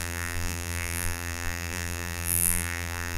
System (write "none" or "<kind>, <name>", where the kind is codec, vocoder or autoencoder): vocoder, BigVGAN v2